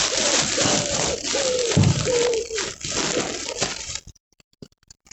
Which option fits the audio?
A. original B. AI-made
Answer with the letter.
B